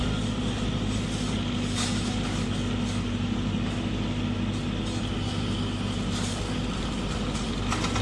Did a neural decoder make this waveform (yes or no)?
no